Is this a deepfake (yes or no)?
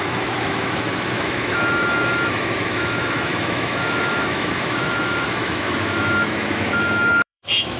yes